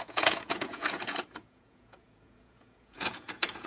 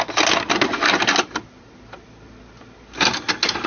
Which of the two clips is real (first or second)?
second